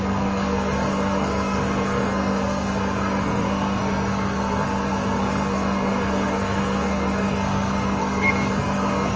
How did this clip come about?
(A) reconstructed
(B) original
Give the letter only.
A